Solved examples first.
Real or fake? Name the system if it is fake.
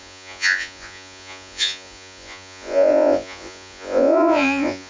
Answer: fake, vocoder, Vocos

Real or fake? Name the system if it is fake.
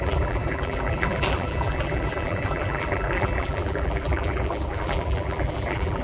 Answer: fake, vocoder, BigVGAN v2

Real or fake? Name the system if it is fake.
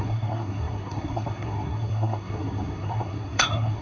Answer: fake, codec, SNAC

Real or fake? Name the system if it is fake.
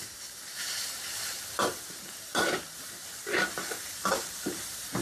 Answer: fake, vocoder, BigVGAN v2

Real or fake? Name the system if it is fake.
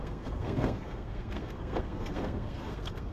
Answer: fake, codec, SNAC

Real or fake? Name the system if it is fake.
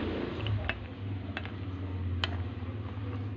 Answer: real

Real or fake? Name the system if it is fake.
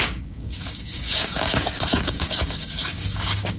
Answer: fake, codec, DAC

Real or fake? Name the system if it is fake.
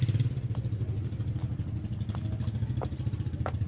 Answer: real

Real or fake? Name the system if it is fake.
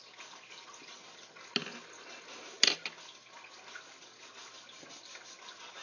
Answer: real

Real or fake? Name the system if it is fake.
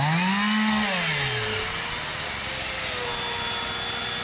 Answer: real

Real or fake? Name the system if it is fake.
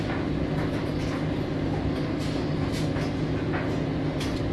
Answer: real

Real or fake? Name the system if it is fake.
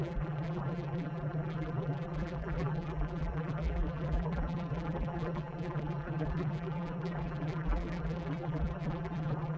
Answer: fake, vocoder, BigVGAN v2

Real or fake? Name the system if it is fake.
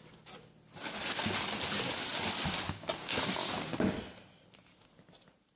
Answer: real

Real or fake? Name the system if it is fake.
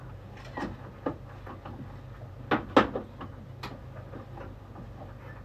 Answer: real